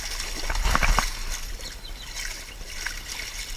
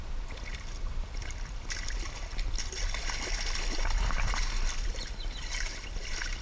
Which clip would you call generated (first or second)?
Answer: second